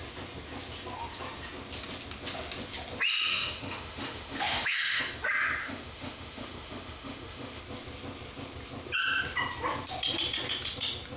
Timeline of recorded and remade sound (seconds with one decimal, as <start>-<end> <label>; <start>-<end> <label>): 0.0-3.3 recorded; 3.3-5.0 remade; 5.0-5.6 recorded; 5.6-7.6 remade; 7.6-11.2 recorded